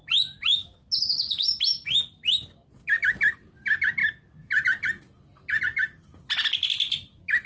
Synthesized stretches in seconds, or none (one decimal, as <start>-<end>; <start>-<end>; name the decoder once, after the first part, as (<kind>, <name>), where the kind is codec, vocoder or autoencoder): none